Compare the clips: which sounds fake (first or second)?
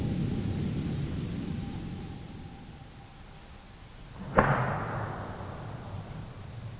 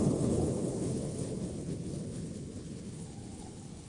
second